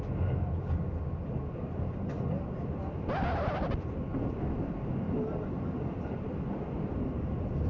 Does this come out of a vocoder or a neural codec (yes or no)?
no